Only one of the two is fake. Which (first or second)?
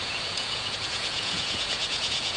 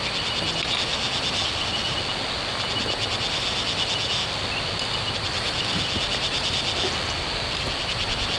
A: first